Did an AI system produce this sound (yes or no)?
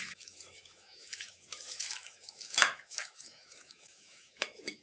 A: yes